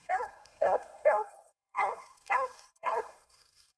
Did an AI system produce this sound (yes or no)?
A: yes